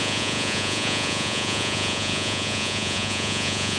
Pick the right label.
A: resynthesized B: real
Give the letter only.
A